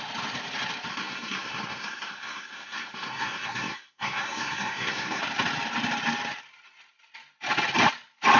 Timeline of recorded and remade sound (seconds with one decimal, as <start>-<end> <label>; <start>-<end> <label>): 0.0-0.9 recorded; 0.9-5.2 remade; 5.2-8.4 recorded